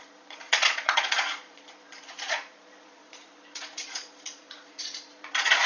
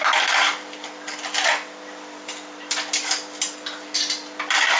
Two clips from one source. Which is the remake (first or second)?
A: first